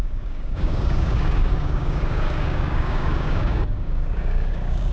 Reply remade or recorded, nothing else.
remade